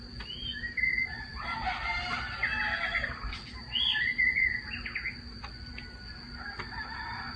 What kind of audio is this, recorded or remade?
recorded